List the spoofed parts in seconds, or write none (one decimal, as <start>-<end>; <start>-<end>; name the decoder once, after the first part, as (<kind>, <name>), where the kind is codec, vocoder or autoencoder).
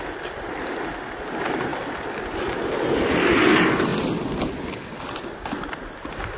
none